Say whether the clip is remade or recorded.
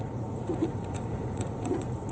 remade